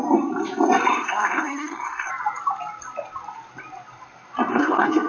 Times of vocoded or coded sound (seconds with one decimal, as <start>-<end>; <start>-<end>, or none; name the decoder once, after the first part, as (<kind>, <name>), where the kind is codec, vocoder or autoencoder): 0.9-2.1 (codec, SNAC); 4.5-5.1